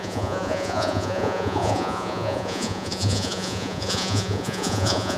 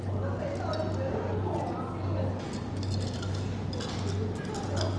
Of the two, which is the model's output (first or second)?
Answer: first